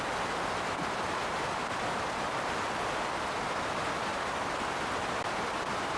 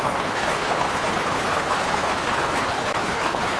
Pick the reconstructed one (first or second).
second